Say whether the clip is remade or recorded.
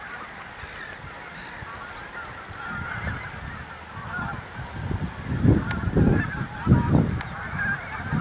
recorded